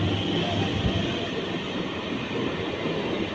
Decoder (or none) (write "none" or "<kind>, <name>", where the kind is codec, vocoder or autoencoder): none